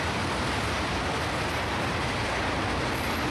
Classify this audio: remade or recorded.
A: recorded